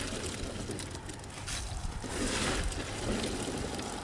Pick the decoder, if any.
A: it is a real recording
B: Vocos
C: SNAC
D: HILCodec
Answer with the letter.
A